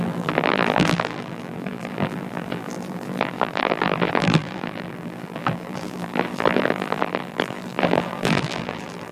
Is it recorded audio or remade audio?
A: remade